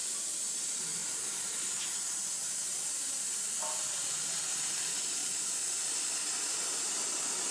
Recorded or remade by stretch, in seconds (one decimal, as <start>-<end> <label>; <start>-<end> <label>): 0.0-7.5 recorded